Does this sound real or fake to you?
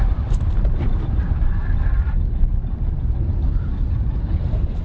real